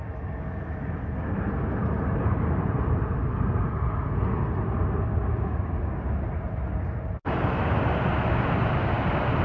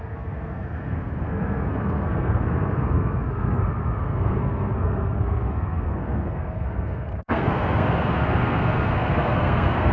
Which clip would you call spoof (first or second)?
second